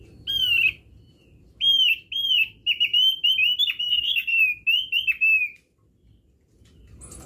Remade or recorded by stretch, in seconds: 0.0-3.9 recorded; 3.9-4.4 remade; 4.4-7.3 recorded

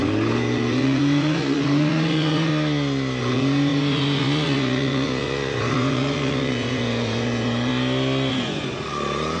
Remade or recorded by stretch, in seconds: 0.0-2.5 remade; 2.5-3.2 recorded; 3.2-7.7 remade; 7.7-8.3 recorded; 8.3-9.4 remade